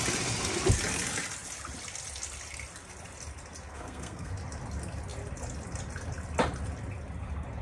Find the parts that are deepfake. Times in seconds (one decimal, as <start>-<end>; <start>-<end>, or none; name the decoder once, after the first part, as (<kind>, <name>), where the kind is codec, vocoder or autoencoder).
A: 3.7-4.3 (codec, SNAC)